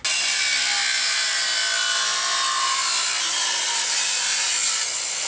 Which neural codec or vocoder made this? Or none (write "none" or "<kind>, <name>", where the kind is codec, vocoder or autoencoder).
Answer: none